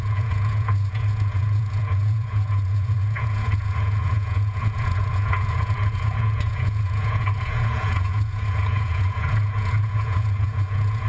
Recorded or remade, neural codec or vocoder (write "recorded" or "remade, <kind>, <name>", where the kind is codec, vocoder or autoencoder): remade, vocoder, Vocos